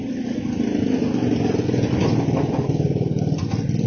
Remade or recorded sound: recorded